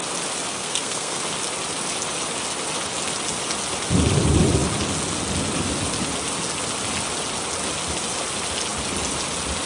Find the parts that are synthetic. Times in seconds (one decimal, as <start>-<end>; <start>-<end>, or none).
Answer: 0.5-1.2

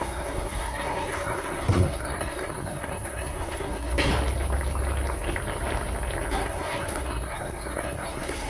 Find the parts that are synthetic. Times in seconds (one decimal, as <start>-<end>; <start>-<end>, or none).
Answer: 0.0-4.1; 6.3-8.5

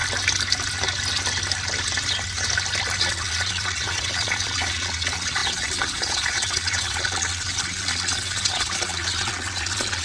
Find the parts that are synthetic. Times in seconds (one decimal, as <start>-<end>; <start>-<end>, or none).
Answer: 3.0-10.0

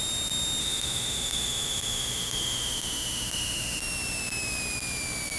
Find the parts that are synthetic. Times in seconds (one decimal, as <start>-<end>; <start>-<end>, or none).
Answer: 0.6-3.8

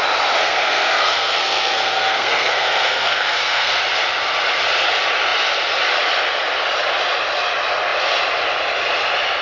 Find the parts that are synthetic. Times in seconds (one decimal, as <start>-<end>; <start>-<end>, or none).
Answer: 0.4-3.8

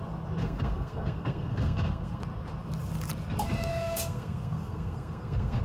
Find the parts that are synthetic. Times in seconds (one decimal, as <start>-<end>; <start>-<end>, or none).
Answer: 0.4-2.2; 3.7-5.6

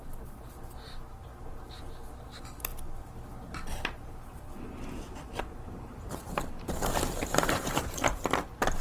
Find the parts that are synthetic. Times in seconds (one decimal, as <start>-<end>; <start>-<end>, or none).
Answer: 7.2-7.8